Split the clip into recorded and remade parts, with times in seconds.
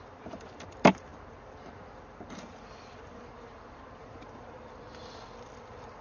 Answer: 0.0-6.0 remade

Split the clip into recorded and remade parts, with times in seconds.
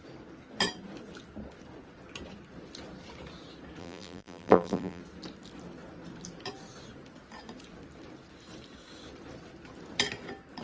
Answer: 0.0-3.8 recorded; 3.8-5.0 remade; 5.0-10.6 recorded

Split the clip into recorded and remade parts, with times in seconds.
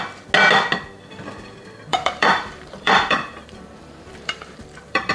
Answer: 0.0-1.9 recorded; 1.9-5.1 remade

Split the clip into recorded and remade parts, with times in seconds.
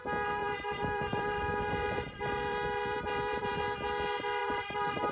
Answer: 0.0-0.4 recorded; 0.4-3.5 remade; 3.5-4.4 recorded; 4.4-5.1 remade